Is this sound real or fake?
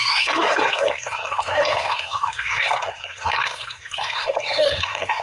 fake